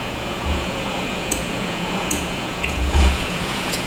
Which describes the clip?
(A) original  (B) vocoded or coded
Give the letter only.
B